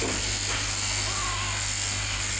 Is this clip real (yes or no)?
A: yes